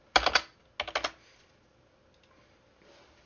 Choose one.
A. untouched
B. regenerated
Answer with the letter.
A